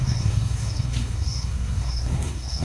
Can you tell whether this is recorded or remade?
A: remade